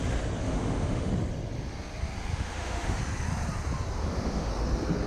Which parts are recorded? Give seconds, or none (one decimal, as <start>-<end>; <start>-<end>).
0.0-0.4; 1.1-2.3; 3.0-4.0; 4.5-5.1